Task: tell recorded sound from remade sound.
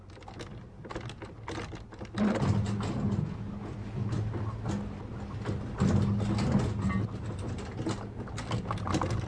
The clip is recorded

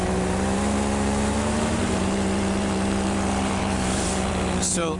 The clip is remade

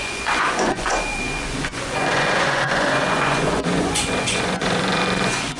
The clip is remade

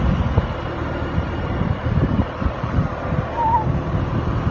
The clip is recorded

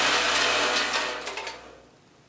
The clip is recorded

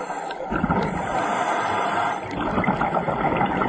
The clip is recorded